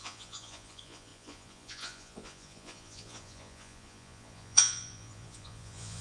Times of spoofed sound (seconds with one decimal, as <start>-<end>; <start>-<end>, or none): 0.0-6.0